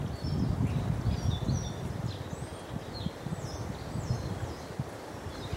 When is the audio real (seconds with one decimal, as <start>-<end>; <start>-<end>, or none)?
0.0-5.6